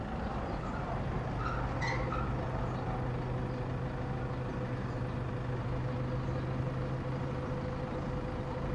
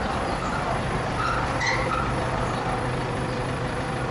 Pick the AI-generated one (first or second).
second